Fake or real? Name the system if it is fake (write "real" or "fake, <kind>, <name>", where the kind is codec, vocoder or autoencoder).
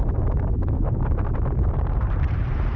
fake, vocoder, BigVGAN v2